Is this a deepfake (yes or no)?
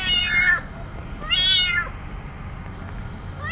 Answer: no